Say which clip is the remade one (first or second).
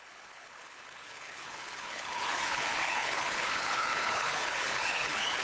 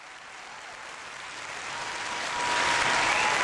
first